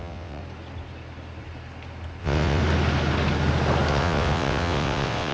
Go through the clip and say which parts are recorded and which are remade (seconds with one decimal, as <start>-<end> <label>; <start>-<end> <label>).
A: 0.0-0.4 remade; 0.4-2.2 recorded; 2.2-2.6 remade; 2.6-3.9 recorded; 3.9-5.3 remade